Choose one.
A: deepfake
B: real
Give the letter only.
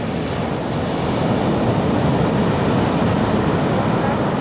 B